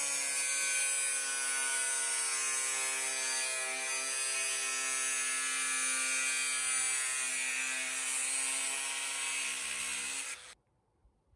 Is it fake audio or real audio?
real